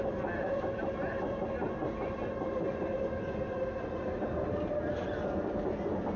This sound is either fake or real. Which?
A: real